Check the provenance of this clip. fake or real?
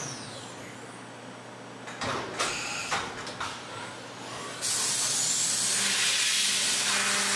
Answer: real